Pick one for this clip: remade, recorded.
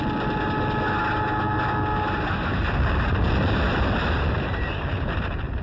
recorded